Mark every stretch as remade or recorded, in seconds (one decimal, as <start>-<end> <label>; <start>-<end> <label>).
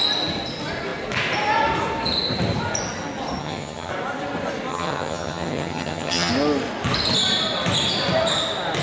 0.0-3.4 recorded; 3.4-3.9 remade; 3.9-4.7 recorded; 4.7-6.3 remade; 6.3-8.8 recorded